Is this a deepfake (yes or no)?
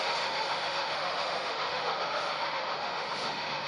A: yes